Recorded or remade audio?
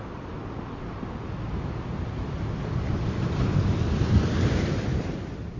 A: recorded